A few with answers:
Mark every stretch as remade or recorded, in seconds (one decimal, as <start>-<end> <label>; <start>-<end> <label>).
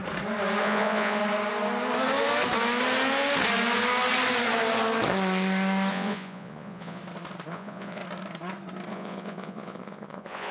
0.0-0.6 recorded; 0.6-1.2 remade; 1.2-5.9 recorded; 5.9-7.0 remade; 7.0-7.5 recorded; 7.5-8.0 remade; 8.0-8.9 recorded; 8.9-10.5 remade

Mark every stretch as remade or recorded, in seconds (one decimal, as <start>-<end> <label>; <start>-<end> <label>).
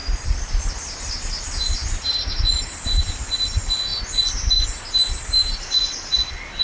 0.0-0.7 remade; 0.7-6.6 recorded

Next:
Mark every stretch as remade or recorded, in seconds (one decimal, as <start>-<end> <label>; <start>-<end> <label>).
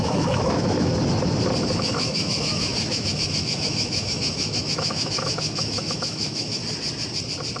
0.0-0.9 remade; 0.9-1.8 recorded; 1.8-6.6 remade; 6.6-7.6 recorded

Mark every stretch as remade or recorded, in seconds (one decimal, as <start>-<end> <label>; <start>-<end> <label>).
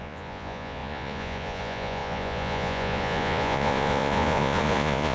0.0-5.1 remade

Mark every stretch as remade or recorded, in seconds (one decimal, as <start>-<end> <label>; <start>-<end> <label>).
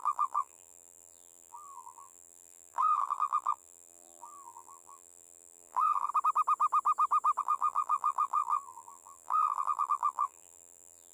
0.0-6.1 remade; 6.1-7.4 recorded; 7.4-11.1 remade